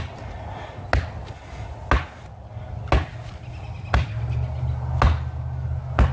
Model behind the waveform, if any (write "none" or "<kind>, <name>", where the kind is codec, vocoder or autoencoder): none